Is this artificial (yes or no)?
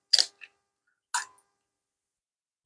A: no